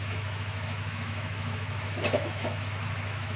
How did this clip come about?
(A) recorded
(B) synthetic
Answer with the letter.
B